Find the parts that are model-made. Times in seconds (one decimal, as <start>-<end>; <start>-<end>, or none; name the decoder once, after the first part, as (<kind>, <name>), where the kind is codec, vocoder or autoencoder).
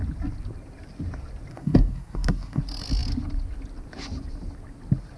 1.5-2.6 (codec, SNAC)